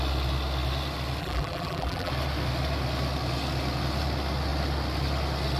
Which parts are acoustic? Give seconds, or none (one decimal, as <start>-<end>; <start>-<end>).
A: 0.0-1.2; 2.1-5.6

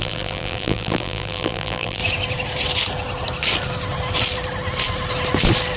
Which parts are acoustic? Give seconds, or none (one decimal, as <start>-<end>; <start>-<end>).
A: 2.0-5.8